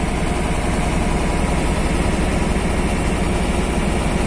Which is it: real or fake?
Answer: real